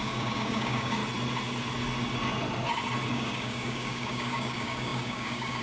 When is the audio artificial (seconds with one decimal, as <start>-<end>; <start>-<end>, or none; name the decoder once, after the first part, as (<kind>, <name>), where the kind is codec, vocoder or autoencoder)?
0.0-1.0 (codec, DAC); 3.1-5.6